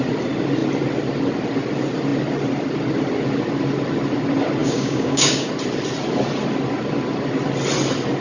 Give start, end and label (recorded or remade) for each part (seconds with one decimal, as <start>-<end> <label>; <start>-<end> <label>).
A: 0.0-4.6 recorded; 4.6-5.5 remade; 5.5-8.2 recorded